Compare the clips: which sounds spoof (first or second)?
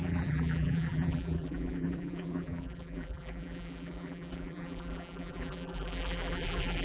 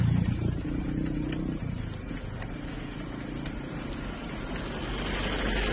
first